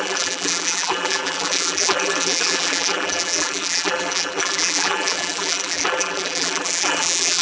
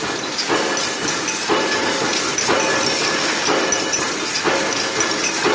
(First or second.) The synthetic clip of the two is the first